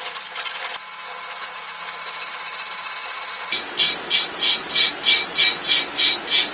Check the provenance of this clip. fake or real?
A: real